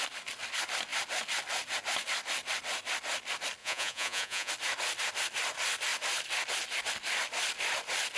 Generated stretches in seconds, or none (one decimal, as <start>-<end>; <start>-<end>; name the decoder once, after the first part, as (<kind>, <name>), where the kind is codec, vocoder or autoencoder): 3.6-4.5 (vocoder, Vocos)